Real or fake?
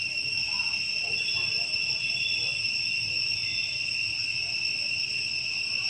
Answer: real